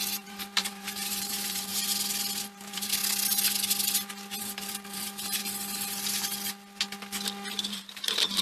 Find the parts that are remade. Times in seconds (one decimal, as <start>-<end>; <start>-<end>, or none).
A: 0.0-1.7; 2.4-3.0; 4.4-5.4; 7.5-8.4